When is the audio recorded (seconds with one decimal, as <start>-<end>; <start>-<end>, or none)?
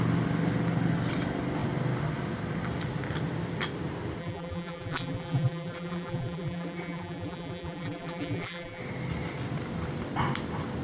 0.0-4.2; 8.8-10.8